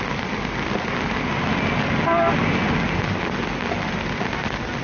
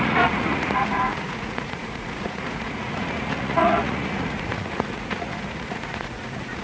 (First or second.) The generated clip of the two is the second